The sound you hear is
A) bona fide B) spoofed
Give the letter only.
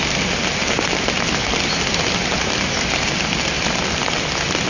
A